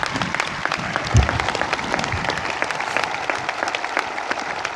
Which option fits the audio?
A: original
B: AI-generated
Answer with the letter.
A